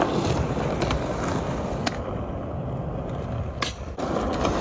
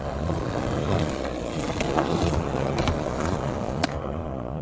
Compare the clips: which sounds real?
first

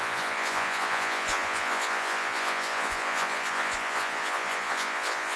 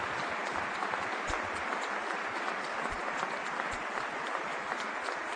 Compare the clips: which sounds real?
second